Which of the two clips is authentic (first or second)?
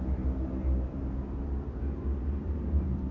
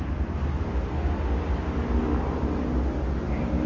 second